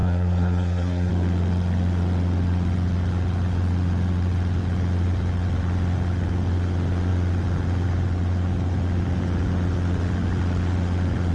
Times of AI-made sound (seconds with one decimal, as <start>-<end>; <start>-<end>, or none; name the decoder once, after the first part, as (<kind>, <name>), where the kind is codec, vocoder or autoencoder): 0.0-1.1 (codec, SNAC)